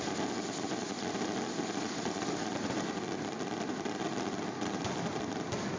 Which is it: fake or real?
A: real